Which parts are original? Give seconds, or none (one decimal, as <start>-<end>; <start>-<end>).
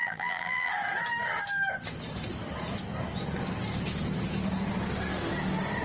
0.7-5.8